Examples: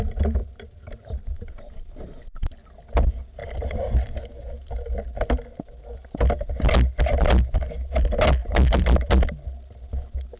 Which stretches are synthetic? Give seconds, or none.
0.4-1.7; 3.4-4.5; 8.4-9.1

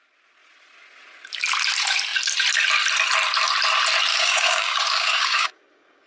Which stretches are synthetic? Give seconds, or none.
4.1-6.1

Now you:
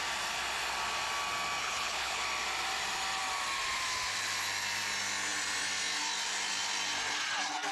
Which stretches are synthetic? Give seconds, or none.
1.6-2.2

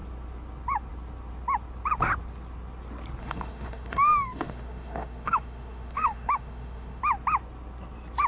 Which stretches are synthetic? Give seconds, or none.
3.2-7.0

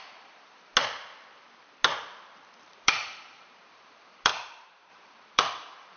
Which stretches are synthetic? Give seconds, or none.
0.0-0.7; 2.7-6.0

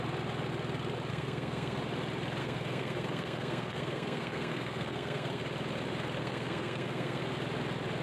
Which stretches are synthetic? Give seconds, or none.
1.1-1.8; 2.4-5.4; 6.2-7.2

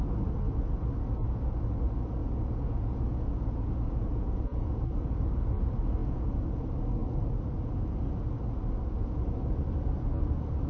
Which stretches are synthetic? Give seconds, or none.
2.2-5.3; 6.0-6.6